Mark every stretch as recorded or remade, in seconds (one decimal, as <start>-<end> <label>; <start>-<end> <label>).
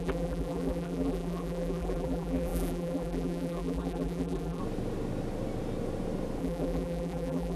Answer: 0.0-4.6 remade; 4.6-6.4 recorded; 6.4-7.6 remade